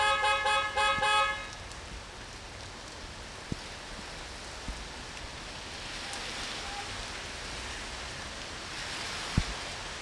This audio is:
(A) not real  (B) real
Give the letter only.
B